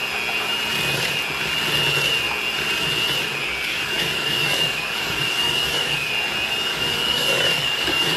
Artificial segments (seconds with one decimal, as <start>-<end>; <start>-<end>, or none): 3.4-6.1; 6.7-8.2

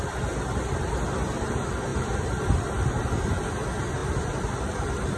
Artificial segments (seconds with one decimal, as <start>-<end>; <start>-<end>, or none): none

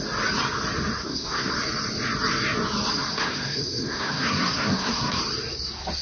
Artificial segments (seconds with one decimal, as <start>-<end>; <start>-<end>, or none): 1.0-1.5; 3.1-5.2